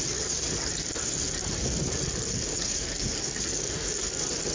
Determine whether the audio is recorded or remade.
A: recorded